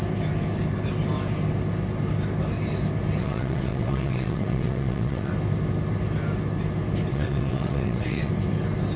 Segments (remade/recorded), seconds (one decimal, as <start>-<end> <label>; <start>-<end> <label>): 0.0-3.2 recorded; 3.2-5.3 remade; 5.3-7.1 recorded; 7.1-8.3 remade; 8.3-9.0 recorded